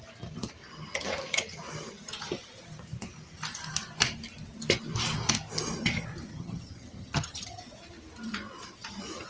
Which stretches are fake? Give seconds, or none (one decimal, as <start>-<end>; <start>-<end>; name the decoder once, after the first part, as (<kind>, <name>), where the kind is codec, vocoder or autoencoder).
6.3-7.6 (vocoder, HiFi-GAN)